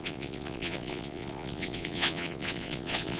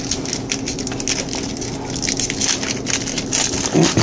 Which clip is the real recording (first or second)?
second